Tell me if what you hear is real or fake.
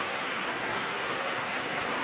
fake